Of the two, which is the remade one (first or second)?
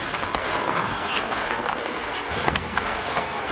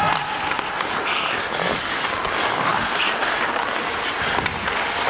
first